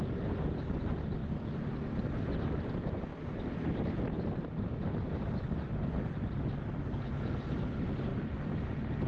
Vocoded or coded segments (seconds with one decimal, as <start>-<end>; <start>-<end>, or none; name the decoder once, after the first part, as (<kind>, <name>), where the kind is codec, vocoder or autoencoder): none

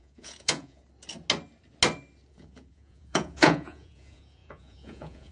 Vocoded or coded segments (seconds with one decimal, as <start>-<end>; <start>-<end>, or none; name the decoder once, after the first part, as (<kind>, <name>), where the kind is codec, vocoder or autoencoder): 0.0-0.8 (vocoder, Vocos); 2.3-5.3